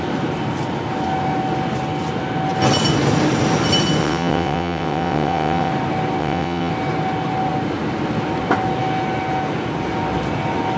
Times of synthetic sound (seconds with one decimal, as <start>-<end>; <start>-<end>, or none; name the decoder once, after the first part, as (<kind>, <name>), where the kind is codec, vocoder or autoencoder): 4.0-5.7 (vocoder, WaveNeXt); 6.2-6.7